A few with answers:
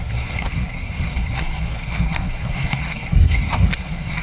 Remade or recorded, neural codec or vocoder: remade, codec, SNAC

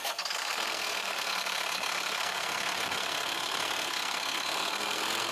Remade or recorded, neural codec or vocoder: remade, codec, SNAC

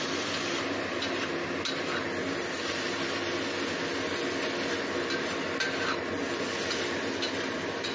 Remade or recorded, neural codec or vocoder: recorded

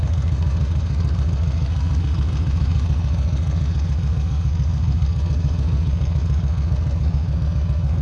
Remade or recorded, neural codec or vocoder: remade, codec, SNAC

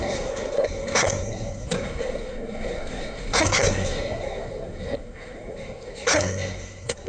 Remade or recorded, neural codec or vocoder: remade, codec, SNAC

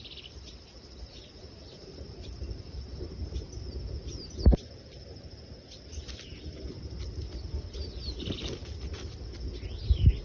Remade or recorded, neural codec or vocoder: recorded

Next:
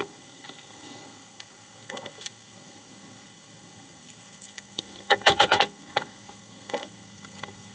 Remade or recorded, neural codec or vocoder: remade, codec, SNAC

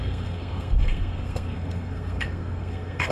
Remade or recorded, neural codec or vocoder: remade, codec, SNAC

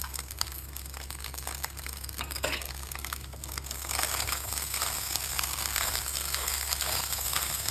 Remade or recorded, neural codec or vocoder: remade, codec, SNAC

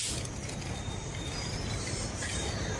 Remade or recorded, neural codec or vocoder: recorded